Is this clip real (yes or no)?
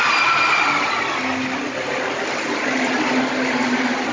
yes